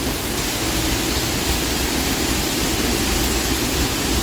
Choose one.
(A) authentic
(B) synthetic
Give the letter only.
A